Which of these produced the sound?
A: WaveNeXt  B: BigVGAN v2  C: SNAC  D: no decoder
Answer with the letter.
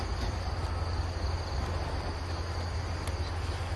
D